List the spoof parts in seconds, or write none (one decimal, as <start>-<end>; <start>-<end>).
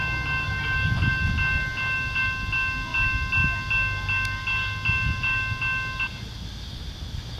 none